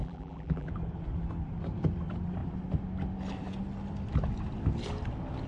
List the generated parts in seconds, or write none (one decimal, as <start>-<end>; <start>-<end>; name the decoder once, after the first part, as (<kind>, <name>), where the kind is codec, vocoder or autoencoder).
0.0-0.7 (vocoder, BigVGAN v2)